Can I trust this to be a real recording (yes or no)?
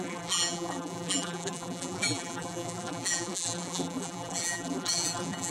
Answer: no